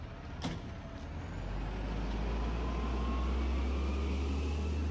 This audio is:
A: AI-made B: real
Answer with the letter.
B